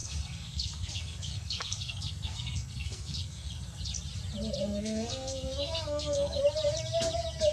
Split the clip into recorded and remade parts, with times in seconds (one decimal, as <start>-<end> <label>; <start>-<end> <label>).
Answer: 0.0-3.8 remade; 3.8-4.6 recorded; 4.6-6.4 remade; 6.4-7.5 recorded